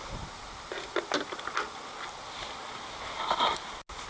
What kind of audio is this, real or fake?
real